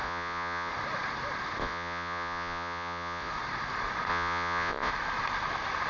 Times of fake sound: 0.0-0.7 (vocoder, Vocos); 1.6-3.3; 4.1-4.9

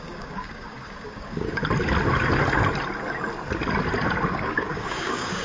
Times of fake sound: 0.0-1.6 (codec, DAC); 4.3-5.4

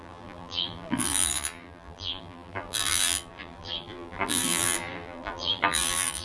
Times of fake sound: 0.0-6.2 (vocoder, BigVGAN v2)